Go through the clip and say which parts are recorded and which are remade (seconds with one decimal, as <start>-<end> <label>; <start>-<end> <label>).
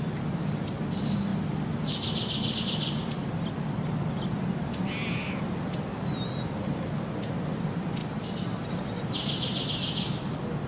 0.0-10.7 recorded